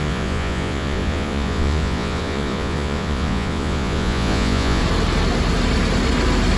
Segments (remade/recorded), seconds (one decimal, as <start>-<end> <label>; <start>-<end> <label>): 0.0-4.8 remade; 4.8-6.6 recorded